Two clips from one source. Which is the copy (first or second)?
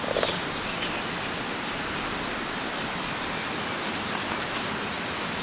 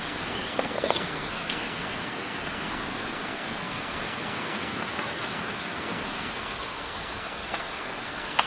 second